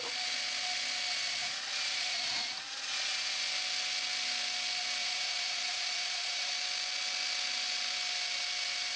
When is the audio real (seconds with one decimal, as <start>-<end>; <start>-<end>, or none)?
0.0-1.4; 3.4-5.0; 6.5-9.0